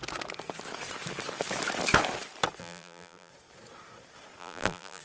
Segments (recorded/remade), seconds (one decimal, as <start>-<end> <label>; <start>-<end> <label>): 0.0-2.6 recorded; 2.6-3.3 remade; 3.3-4.4 recorded; 4.4-5.0 remade